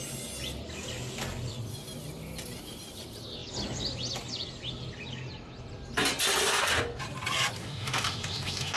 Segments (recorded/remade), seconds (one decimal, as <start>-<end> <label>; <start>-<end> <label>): 0.0-7.6 recorded; 7.6-8.8 remade